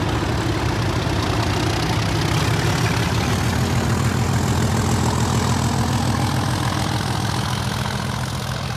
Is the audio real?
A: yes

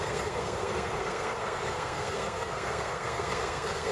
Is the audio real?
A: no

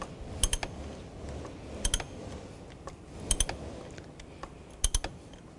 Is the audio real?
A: yes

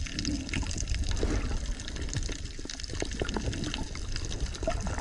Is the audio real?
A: yes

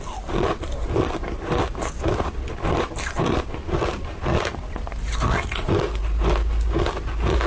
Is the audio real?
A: yes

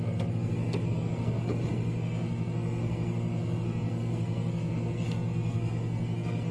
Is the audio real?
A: no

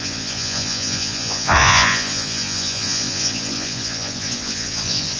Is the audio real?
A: no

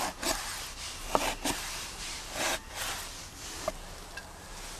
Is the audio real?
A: yes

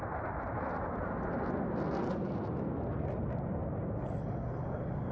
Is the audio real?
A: yes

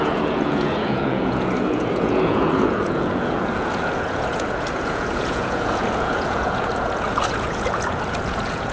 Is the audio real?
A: no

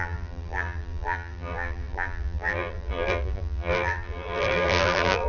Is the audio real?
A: no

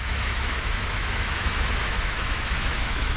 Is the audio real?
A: no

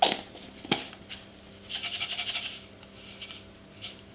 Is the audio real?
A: yes